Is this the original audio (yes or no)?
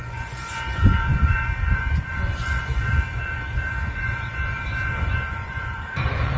no